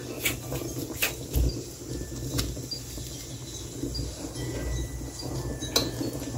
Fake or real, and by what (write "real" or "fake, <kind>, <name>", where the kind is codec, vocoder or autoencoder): real